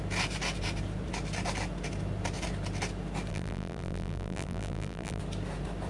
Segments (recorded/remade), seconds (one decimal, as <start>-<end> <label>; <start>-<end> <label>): 0.0-3.3 recorded; 3.3-5.2 remade; 5.2-5.9 recorded